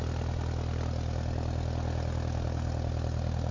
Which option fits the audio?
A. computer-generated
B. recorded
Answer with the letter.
B